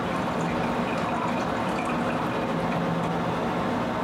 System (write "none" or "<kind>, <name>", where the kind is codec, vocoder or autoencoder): none